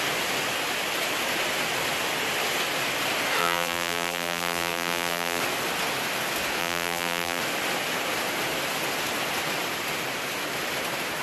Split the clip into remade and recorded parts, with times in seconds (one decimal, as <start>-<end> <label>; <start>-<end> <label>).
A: 0.0-3.4 recorded; 3.4-5.4 remade; 5.4-6.6 recorded; 6.6-7.4 remade; 7.4-11.2 recorded